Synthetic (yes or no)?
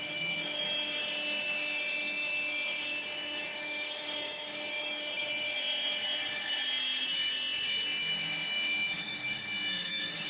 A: yes